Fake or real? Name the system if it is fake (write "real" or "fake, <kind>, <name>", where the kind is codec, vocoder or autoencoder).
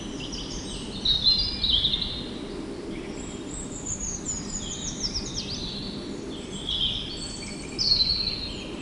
real